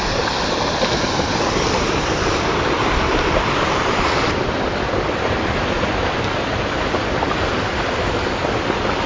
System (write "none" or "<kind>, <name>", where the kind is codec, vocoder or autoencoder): none